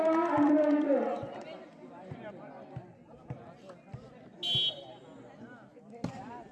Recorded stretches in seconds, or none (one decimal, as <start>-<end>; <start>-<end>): 0.0-0.9; 2.5-6.5